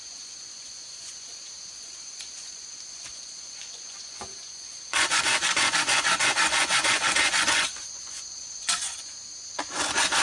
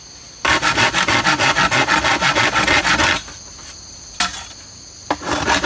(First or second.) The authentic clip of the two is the second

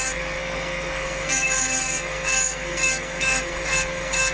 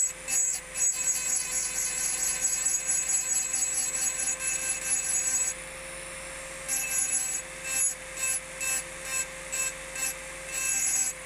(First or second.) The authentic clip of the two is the second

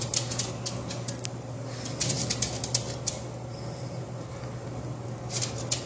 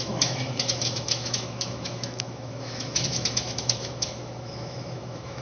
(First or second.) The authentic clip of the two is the first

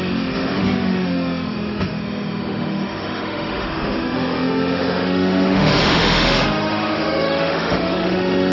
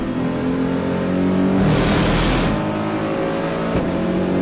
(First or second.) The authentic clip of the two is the second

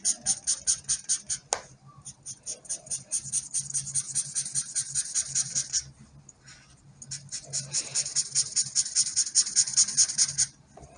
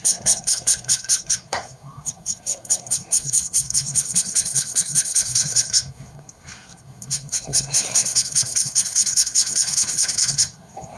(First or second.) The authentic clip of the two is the first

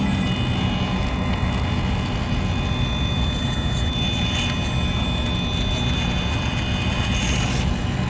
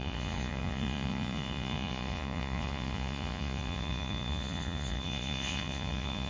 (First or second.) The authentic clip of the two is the first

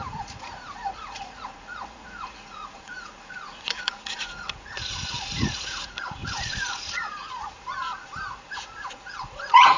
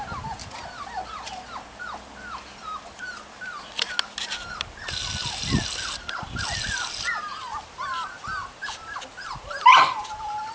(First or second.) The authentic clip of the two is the second